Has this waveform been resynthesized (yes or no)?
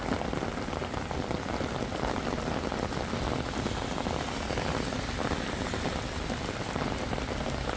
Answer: no